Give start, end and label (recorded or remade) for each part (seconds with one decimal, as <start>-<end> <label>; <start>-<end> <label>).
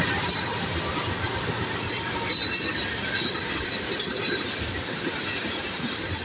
0.0-3.7 remade; 3.7-6.2 recorded